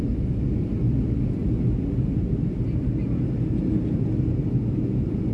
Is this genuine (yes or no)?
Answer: yes